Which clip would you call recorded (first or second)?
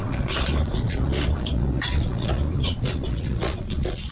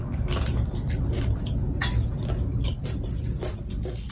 second